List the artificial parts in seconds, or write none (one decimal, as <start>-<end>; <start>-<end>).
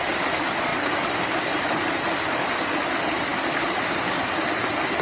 0.7-2.7